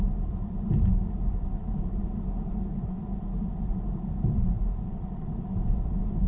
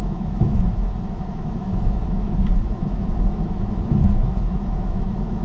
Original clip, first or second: first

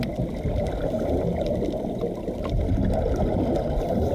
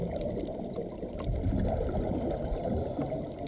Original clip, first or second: first